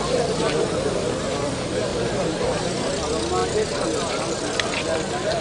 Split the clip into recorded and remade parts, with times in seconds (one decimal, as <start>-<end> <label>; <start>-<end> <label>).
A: 0.0-5.4 recorded